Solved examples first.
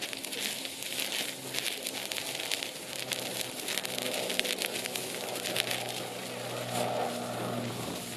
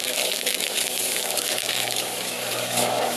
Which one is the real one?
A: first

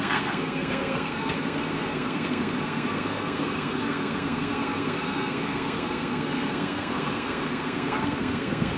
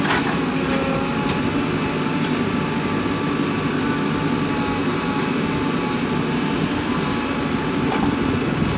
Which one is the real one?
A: second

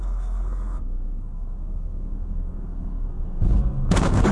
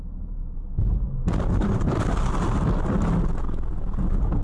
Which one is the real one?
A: second